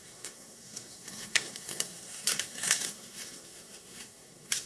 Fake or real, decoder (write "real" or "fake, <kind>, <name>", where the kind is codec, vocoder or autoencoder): fake, codec, SNAC